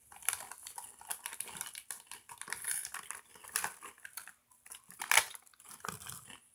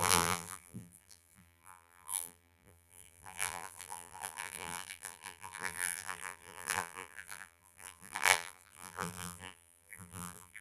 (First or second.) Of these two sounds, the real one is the first